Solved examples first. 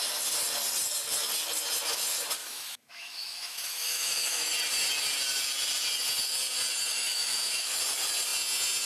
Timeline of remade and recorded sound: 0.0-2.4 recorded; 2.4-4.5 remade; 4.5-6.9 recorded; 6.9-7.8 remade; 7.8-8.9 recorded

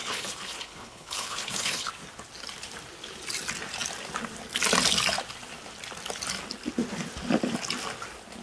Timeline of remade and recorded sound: 0.0-1.9 remade; 1.9-8.4 recorded